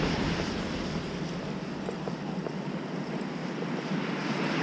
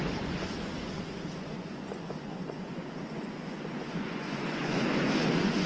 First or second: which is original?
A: first